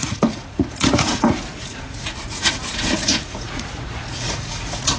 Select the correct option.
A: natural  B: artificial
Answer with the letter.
B